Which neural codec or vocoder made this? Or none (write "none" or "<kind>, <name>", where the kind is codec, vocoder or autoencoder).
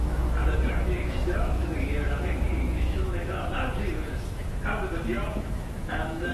autoencoder, DAC-VAE